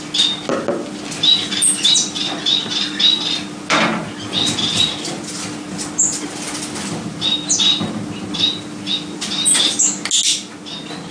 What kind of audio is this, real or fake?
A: real